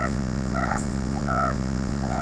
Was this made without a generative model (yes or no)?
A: no